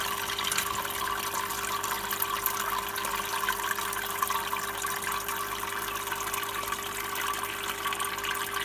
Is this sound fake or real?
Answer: real